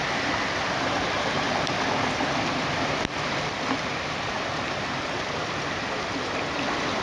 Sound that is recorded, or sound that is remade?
remade